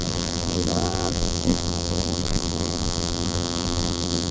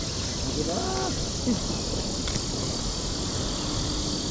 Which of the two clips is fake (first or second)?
first